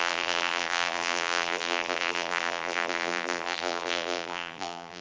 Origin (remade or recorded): remade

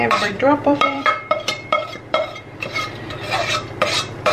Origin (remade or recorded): remade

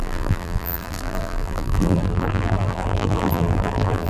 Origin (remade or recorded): remade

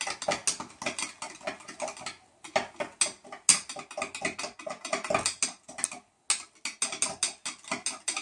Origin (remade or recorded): recorded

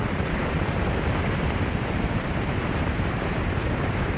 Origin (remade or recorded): remade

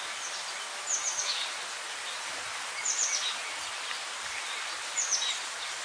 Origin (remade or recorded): recorded